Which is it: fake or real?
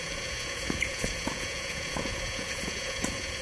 fake